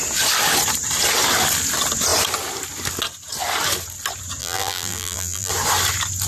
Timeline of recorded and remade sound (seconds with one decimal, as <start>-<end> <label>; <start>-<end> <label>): 0.0-4.4 recorded; 4.4-5.5 remade; 5.5-6.3 recorded